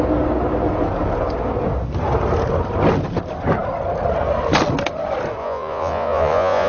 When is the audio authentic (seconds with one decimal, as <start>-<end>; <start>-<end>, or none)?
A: 0.0-5.4